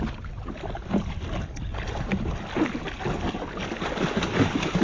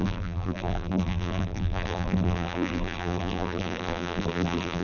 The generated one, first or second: second